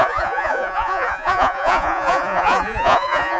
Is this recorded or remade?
remade